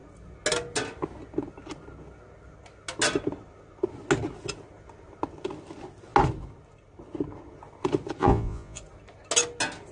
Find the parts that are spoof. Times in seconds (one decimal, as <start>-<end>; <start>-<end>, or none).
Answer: 8.2-8.8